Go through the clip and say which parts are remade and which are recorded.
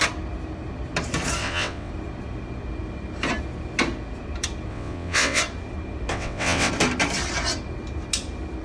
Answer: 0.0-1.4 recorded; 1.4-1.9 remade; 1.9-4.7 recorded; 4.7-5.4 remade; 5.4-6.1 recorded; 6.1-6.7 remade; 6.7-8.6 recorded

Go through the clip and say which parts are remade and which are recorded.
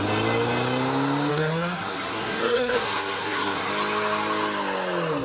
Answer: 0.0-1.3 recorded; 1.3-3.7 remade; 3.7-5.2 recorded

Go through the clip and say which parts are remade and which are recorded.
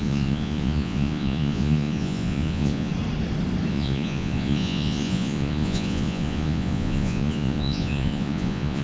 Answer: 0.0-2.9 remade; 2.9-3.7 recorded; 3.7-8.8 remade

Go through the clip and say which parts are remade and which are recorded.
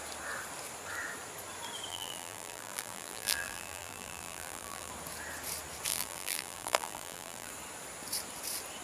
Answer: 0.0-1.9 recorded; 1.9-4.9 remade; 4.9-5.9 recorded; 5.9-7.5 remade; 7.5-8.8 recorded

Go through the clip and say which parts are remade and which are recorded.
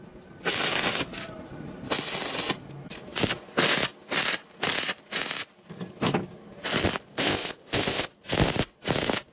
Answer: 0.0-7.1 recorded; 7.1-8.1 remade; 8.1-9.3 recorded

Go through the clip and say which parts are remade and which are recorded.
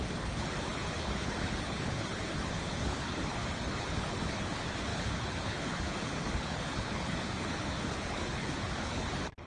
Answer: 0.0-9.5 remade